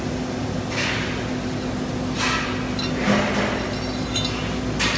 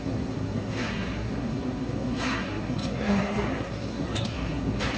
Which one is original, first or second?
first